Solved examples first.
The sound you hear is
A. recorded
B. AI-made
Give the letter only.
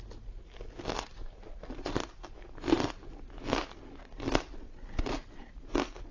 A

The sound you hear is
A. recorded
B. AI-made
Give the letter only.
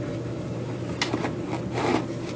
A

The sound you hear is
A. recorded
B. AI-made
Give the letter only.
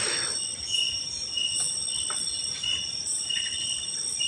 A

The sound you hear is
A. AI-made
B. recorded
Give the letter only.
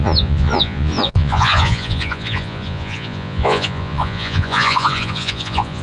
A